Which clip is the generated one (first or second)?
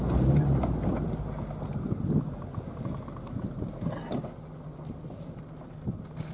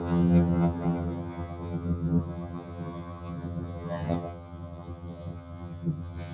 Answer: second